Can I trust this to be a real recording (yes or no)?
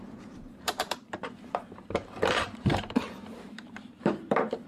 no